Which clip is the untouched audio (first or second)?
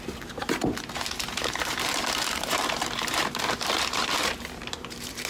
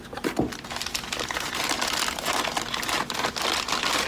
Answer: second